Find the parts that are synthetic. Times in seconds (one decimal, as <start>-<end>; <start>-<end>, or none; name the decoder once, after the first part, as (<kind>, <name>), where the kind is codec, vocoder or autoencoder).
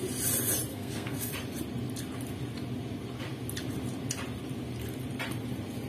0.7-1.3 (codec, SNAC)